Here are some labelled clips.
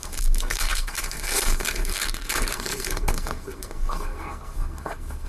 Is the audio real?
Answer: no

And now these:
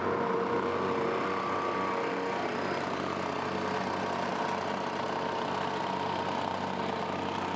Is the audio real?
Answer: yes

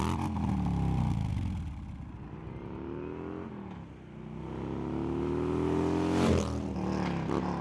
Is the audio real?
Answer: yes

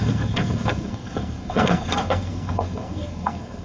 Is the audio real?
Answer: no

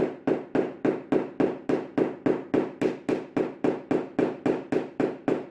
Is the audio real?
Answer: yes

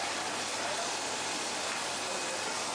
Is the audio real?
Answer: yes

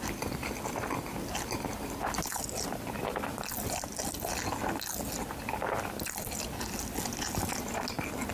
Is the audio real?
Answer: yes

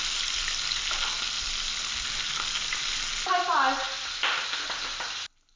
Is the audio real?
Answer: yes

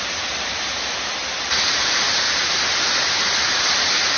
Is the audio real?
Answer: yes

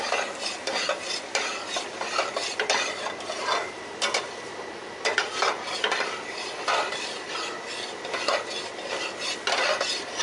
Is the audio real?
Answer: yes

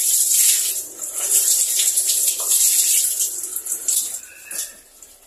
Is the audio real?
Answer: yes